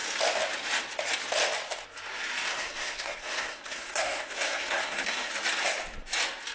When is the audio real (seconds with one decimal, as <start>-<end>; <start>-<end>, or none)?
0.0-2.5; 5.3-6.5